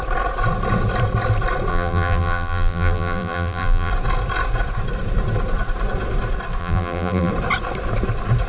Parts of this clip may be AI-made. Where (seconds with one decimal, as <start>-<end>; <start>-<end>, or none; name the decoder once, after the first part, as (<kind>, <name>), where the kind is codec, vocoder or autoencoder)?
1.7-3.9 (vocoder, BigVGAN v2); 6.6-7.3